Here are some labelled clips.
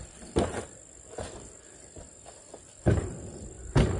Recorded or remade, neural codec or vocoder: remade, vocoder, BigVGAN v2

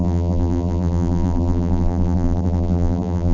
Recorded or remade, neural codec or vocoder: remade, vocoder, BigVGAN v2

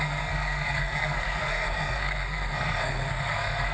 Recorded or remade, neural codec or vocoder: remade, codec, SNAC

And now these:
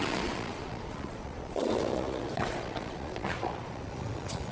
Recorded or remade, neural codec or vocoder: remade, vocoder, Vocos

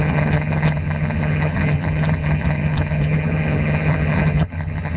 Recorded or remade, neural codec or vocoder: remade, vocoder, HiFi-GAN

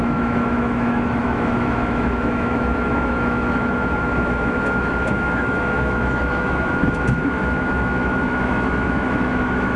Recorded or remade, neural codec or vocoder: remade, autoencoder, DAC-VAE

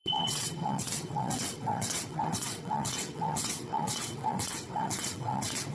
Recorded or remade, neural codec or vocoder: remade, vocoder, WaveNeXt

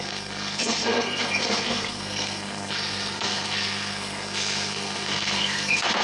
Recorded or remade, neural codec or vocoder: remade, codec, SNAC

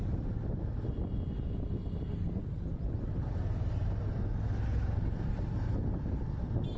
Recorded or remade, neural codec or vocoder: recorded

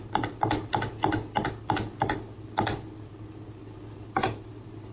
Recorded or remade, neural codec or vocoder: recorded